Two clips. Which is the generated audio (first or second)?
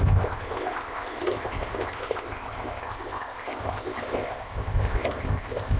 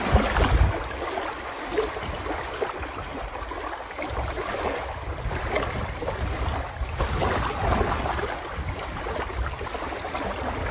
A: first